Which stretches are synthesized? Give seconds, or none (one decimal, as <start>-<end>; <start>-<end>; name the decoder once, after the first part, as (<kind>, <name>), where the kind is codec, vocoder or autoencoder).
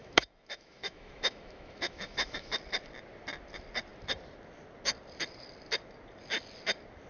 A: 0.0-2.5 (autoencoder, DAC-VAE)